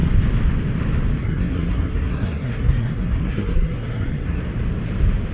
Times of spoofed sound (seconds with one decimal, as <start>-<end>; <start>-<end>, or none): 1.2-4.4